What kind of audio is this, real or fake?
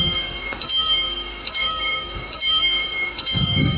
fake